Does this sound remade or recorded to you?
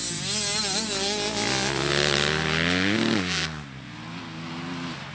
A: recorded